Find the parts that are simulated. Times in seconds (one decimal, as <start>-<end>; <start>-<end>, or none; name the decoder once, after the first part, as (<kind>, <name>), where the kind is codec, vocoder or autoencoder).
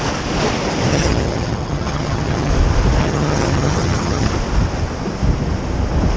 0.9-2.5 (vocoder, HiFi-GAN); 3.0-4.3